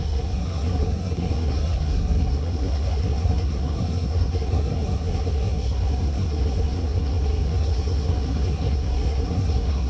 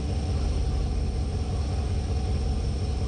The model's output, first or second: first